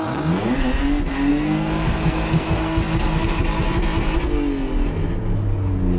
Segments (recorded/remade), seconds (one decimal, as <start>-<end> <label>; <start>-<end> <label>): 0.0-1.3 recorded; 1.3-3.4 remade; 3.4-6.0 recorded